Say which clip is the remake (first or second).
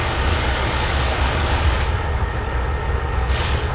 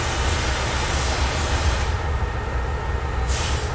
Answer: first